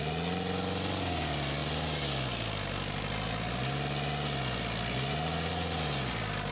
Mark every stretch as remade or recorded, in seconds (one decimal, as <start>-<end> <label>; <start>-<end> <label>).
0.0-6.5 recorded